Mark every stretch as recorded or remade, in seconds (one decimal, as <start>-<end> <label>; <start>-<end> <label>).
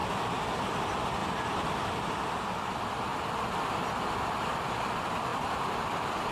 0.0-0.6 remade; 0.6-1.2 recorded; 1.2-2.2 remade; 2.2-5.3 recorded; 5.3-6.3 remade